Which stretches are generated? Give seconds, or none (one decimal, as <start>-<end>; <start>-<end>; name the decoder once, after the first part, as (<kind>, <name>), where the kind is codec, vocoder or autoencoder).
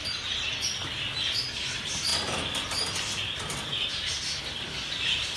none